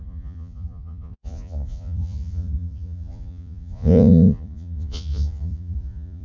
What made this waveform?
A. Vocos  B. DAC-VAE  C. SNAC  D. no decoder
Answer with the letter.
A